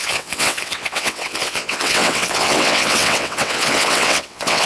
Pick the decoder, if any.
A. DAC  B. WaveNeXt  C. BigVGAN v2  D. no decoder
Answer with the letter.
B